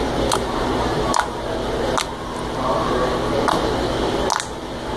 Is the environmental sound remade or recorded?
recorded